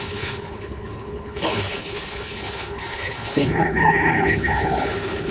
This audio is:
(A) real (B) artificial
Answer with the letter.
B